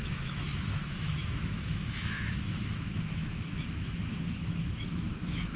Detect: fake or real fake